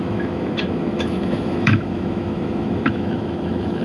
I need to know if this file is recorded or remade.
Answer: remade